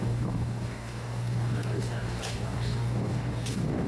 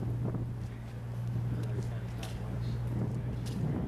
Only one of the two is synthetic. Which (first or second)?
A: first